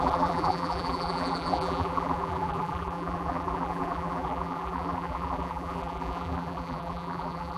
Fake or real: fake